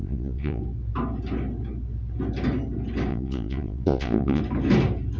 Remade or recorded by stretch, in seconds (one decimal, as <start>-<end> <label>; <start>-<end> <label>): 0.0-0.6 remade; 0.6-3.1 recorded; 3.1-4.4 remade; 4.4-5.2 recorded